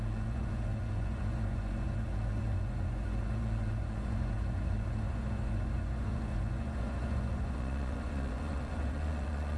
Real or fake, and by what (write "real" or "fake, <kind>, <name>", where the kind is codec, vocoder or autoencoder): fake, vocoder, Vocos